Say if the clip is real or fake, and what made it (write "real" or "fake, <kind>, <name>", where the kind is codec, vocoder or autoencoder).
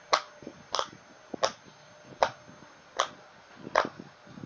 real